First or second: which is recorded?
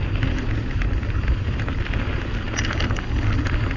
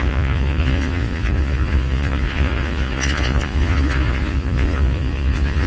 first